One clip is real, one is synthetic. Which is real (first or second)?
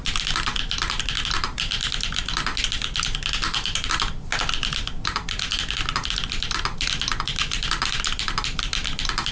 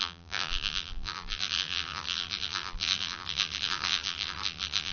first